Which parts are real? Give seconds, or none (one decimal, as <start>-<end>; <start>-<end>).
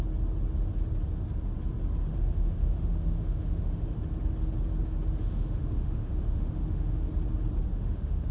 0.0-2.1; 4.0-5.2; 7.1-7.7